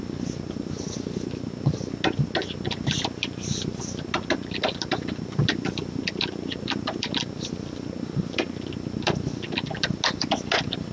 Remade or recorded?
recorded